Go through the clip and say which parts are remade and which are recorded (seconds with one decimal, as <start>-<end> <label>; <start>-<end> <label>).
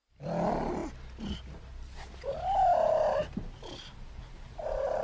0.0-5.0 recorded